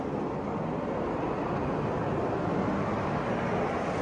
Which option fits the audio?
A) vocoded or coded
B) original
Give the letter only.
B